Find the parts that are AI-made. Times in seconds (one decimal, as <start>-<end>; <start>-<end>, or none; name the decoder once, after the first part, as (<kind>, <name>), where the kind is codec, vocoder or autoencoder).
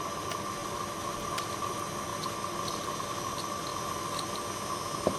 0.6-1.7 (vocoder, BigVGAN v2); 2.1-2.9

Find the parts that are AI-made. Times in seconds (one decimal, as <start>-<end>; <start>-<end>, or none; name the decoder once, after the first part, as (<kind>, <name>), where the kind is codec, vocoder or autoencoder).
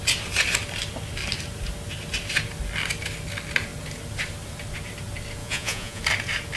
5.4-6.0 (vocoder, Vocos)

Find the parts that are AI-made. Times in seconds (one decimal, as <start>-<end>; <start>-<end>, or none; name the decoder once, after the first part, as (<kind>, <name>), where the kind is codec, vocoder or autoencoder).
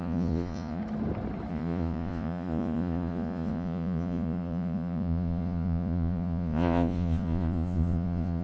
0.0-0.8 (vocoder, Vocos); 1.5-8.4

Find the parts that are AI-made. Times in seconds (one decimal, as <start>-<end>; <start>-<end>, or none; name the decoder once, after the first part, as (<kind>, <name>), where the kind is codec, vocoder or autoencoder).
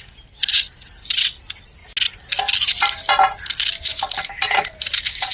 none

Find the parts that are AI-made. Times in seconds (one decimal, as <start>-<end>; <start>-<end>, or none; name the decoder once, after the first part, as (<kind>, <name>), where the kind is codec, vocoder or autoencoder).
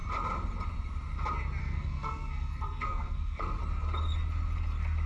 1.6-3.6 (codec, SNAC)